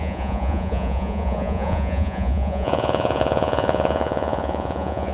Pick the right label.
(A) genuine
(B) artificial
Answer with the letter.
B